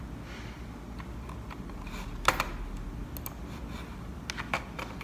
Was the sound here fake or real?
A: real